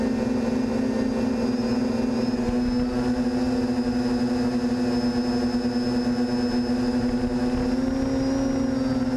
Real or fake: real